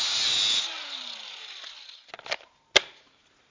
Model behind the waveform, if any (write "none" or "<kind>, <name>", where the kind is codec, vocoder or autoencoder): none